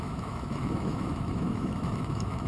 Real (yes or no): no